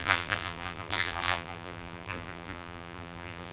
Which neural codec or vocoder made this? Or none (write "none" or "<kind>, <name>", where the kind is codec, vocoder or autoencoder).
vocoder, BigVGAN v2